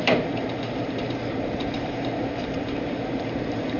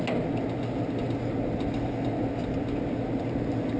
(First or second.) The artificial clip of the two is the first